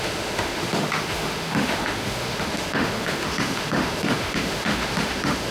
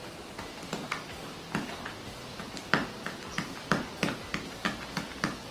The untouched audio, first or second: second